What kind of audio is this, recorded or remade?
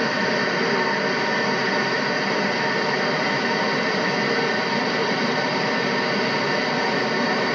recorded